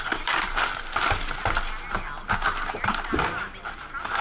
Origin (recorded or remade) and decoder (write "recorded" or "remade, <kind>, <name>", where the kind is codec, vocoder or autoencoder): recorded